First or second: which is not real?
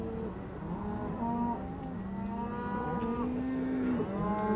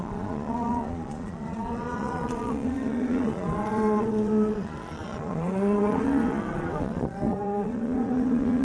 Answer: second